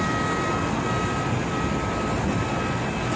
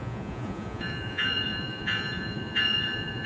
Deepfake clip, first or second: second